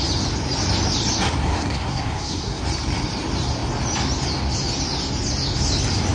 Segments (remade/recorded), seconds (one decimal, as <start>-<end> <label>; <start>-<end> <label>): 0.0-1.4 recorded; 1.4-2.6 remade; 2.6-6.1 recorded